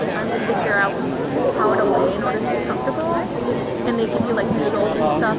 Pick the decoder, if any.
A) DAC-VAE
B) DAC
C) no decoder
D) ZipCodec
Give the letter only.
C